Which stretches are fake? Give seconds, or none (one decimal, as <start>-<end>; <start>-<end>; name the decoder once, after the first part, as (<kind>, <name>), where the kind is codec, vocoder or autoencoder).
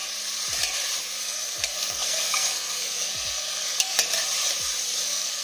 1.2-4.0 (codec, SNAC); 5.0-5.4